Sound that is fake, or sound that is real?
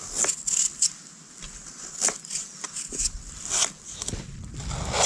real